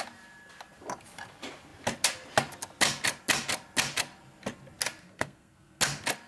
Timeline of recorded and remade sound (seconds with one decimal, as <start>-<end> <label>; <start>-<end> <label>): 0.0-5.0 recorded; 5.0-5.8 remade; 5.8-6.3 recorded